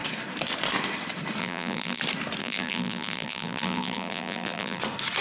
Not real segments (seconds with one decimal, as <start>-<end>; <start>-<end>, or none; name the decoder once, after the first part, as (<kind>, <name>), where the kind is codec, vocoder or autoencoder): 1.4-2.0 (vocoder, BigVGAN v2); 2.4-4.8